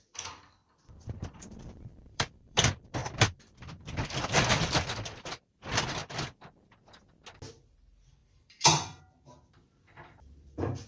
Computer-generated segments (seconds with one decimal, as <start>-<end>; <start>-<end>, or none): 0.0-6.0; 7.5-10.9